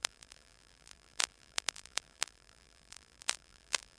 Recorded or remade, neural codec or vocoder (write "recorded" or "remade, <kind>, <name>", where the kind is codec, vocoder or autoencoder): remade, vocoder, BigVGAN v2